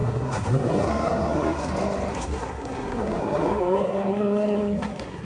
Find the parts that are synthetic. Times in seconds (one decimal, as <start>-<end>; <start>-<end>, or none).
0.0-1.7; 2.1-5.2